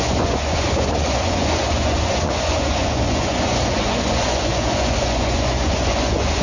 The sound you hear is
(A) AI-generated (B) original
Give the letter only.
A